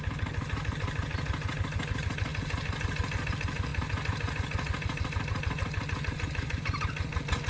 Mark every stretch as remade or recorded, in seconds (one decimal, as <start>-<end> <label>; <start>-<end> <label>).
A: 0.0-7.5 recorded